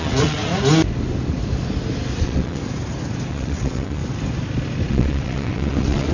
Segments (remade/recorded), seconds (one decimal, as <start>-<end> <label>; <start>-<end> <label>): 0.0-0.4 remade; 0.4-2.2 recorded; 2.2-2.6 remade; 2.6-3.3 recorded; 3.3-4.0 remade; 4.0-4.9 recorded; 4.9-6.1 remade